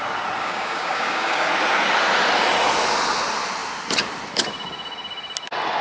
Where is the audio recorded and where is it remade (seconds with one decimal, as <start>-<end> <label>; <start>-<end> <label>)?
0.0-0.4 recorded; 0.4-1.5 remade; 1.5-5.8 recorded